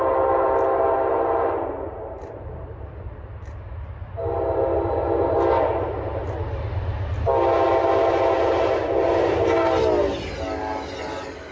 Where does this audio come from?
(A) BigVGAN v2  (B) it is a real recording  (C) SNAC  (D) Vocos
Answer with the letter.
B